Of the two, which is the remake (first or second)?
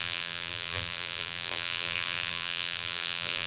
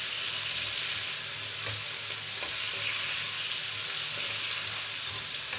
first